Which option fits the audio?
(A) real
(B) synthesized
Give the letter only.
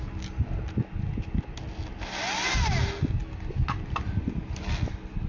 A